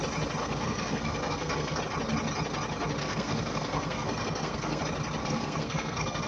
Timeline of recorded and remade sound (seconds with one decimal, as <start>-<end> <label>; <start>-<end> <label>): 0.0-0.4 recorded; 0.4-1.8 remade; 1.8-3.0 recorded; 3.0-4.8 remade; 4.8-5.2 recorded; 5.2-6.3 remade